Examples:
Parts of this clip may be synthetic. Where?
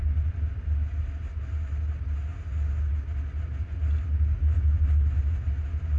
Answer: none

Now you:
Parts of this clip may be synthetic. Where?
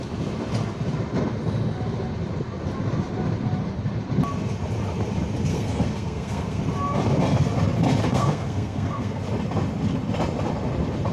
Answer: 5.5-6.6 (codec, SNAC); 8.0-9.2